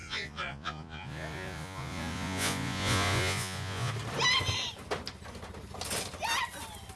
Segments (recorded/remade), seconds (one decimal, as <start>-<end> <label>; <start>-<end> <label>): 0.0-3.9 remade; 3.9-7.0 recorded